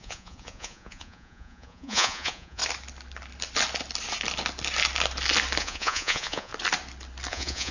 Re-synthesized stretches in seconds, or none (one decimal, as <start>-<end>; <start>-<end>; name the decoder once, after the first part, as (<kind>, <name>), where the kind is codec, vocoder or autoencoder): 0.0-2.6 (vocoder, Vocos); 5.6-6.5; 7.3-7.7